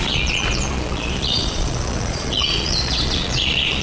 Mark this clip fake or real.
fake